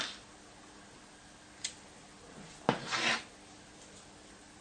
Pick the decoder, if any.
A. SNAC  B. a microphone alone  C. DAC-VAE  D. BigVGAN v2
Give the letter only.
B